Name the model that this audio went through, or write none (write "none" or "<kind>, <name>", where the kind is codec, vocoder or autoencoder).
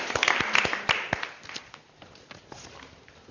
none